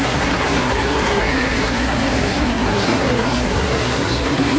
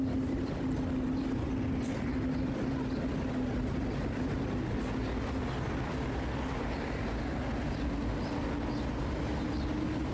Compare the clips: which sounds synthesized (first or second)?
first